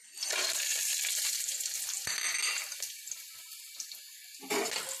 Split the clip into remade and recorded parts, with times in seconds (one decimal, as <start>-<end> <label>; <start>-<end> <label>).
0.0-0.7 recorded; 0.7-3.1 remade; 3.1-5.0 recorded